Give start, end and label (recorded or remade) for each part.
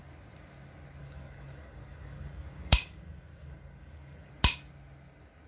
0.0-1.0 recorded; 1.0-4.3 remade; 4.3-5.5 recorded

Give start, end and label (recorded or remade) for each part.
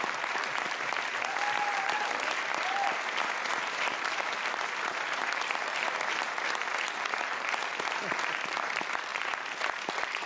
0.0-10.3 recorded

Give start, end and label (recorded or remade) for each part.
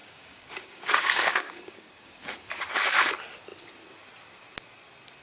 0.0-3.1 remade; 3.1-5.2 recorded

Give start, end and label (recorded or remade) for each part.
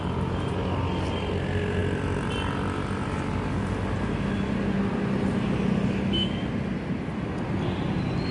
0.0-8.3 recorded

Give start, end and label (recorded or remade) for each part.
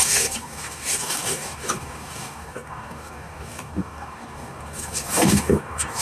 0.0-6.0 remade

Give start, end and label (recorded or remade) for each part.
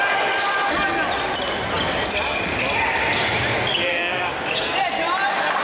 0.0-3.9 recorded; 3.9-4.6 remade; 4.6-5.6 recorded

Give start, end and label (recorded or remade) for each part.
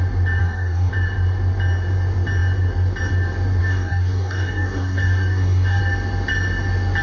0.0-0.4 recorded; 0.4-0.9 remade; 0.9-3.6 recorded; 3.6-5.8 remade; 5.8-7.0 recorded